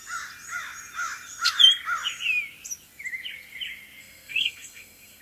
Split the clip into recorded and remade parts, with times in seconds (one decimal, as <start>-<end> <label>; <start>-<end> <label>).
0.0-4.0 recorded; 4.0-5.2 remade